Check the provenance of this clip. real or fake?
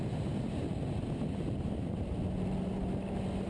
real